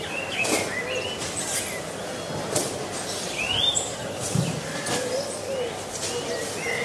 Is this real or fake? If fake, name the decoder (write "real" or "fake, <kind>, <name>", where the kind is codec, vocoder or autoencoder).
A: real